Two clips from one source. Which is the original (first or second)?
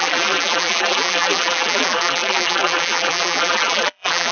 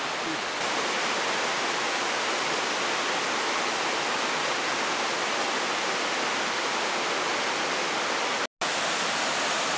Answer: second